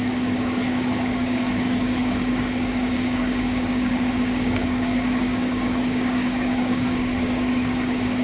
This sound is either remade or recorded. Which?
remade